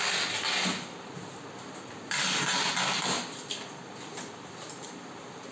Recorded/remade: recorded